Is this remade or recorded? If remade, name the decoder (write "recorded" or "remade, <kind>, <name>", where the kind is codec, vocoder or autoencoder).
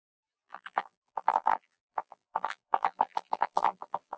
remade, vocoder, BigVGAN v2